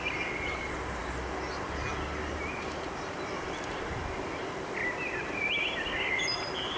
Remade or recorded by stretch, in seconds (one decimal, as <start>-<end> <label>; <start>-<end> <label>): 0.0-1.0 remade; 1.0-5.1 recorded; 5.1-6.8 remade